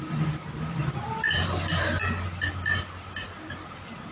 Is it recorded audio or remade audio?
recorded